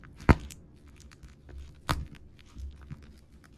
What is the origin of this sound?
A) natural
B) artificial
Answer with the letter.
A